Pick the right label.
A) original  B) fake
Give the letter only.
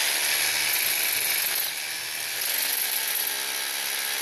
A